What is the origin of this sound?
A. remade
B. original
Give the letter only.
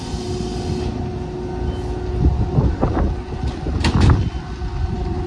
B